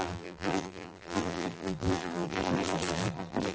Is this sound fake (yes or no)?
yes